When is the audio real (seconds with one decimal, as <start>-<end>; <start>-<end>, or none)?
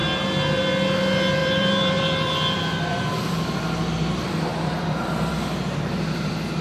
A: 0.0-1.4; 2.3-4.5; 5.3-6.6